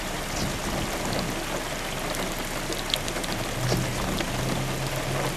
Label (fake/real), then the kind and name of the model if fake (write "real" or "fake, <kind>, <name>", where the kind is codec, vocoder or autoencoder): real